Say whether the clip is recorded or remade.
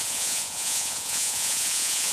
remade